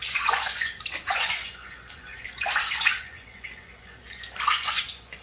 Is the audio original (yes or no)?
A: no